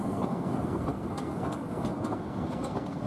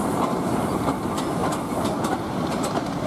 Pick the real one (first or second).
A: second